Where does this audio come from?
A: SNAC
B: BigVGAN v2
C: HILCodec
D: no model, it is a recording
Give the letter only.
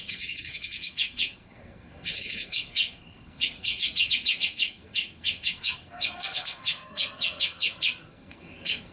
A